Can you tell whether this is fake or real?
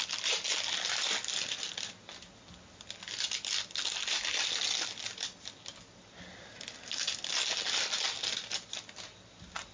real